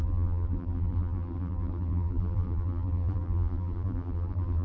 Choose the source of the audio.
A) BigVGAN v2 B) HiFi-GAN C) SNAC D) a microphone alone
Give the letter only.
A